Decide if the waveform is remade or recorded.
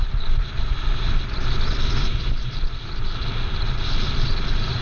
recorded